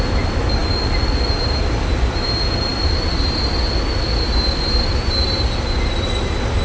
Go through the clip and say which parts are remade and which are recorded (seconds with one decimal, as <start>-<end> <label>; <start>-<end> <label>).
0.0-6.6 recorded